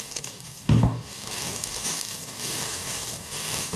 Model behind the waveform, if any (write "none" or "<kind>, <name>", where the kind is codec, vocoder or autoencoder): codec, DAC